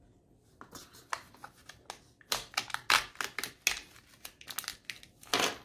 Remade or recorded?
recorded